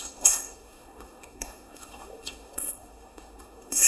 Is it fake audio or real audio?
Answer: fake